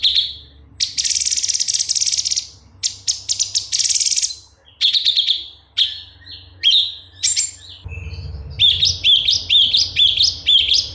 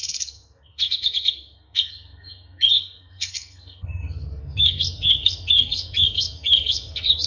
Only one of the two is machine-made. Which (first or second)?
second